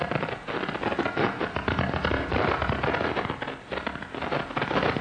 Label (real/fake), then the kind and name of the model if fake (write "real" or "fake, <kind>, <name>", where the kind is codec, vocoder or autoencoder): real